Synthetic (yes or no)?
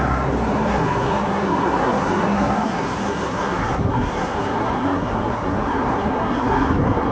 yes